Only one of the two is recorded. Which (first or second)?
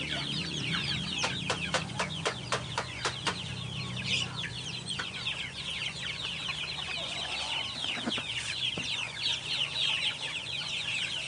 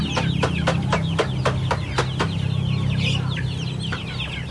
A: second